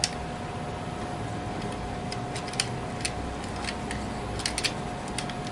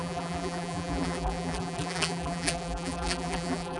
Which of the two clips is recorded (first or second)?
first